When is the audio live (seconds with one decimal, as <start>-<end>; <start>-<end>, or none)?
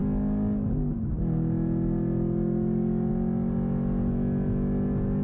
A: 0.0-5.2